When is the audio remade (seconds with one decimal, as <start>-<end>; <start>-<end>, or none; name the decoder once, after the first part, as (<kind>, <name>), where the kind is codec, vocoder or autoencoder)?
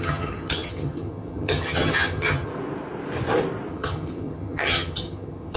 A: 0.0-2.5 (vocoder, HiFi-GAN); 3.7-5.6